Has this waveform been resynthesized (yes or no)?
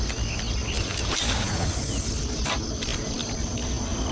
no